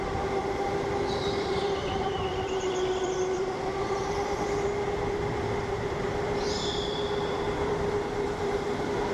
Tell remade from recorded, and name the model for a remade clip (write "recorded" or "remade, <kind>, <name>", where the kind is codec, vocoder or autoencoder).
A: remade, vocoder, BigVGAN v2